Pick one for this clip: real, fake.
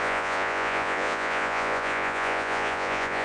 fake